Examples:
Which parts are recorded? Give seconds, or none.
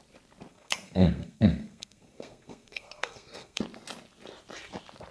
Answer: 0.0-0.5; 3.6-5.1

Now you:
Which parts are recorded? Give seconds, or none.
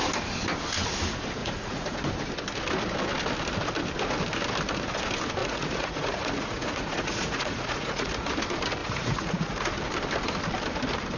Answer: 0.0-1.4; 2.0-5.4; 8.3-8.8; 9.7-11.2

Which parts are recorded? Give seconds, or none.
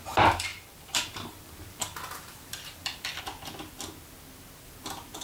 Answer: 0.0-0.5; 3.2-5.2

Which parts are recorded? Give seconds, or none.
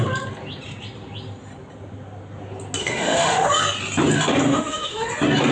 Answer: 0.0-2.8; 3.5-4.5; 5.1-5.5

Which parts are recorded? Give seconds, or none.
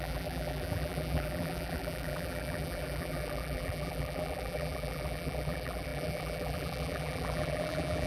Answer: none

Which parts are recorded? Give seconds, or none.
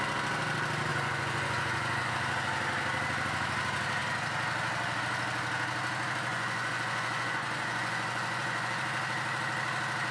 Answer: 0.0-0.9; 2.1-6.3; 8.8-10.1